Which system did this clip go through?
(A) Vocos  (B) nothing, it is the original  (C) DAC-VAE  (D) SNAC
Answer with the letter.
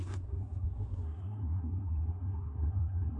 D